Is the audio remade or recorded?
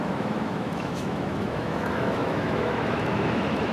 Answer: remade